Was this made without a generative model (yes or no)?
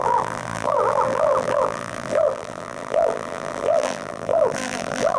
no